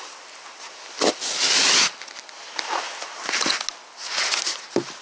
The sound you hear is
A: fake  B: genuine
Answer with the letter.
B